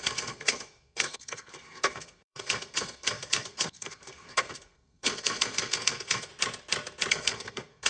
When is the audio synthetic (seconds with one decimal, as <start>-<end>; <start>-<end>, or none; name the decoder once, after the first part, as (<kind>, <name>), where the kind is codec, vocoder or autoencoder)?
0.0-6.3 (codec, SNAC); 7.1-7.9